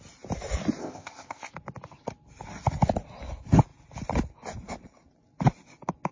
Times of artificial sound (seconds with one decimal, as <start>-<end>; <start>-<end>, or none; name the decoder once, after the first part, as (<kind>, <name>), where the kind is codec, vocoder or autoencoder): 0.8-1.5 (codec, ZipCodec)